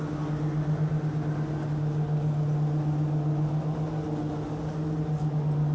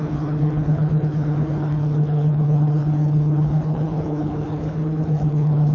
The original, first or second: first